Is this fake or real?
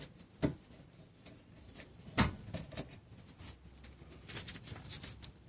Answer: real